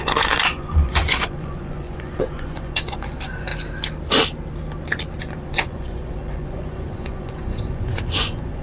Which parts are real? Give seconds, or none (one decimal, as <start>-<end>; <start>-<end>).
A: 3.5-5.2